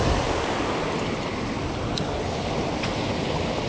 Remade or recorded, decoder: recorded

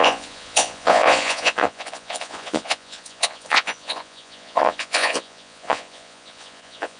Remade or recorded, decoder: remade, vocoder, Vocos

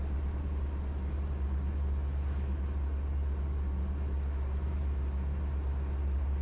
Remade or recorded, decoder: recorded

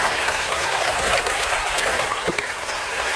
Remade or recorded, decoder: remade, codec, SNAC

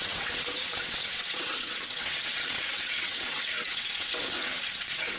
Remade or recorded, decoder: remade, vocoder, WaveNeXt